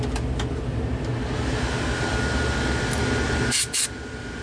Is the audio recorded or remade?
recorded